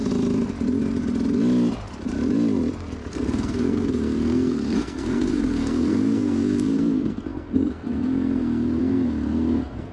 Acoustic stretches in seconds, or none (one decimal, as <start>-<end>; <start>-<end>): 0.0-3.1